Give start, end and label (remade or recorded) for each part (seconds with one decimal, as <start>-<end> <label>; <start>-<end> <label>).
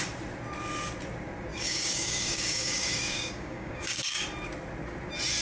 0.0-1.5 recorded; 1.5-4.2 remade; 4.2-5.4 recorded